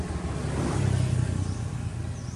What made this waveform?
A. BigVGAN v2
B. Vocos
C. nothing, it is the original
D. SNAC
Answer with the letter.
C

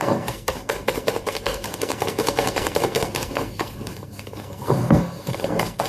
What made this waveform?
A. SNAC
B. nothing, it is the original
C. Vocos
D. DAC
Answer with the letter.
A